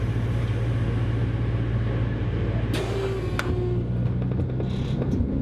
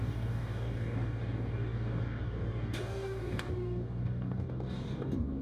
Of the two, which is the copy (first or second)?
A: second